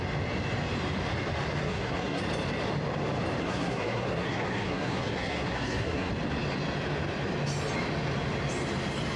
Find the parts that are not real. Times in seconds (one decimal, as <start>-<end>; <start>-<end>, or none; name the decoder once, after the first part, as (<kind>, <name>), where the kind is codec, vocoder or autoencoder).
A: 1.6-2.2 (codec, SNAC); 3.4-6.1